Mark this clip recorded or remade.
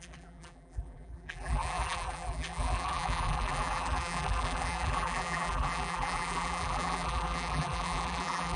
remade